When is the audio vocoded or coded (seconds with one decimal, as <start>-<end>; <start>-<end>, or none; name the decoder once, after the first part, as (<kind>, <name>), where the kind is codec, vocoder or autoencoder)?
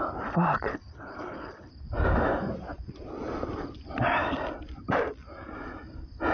0.7-1.7 (codec, HILCodec)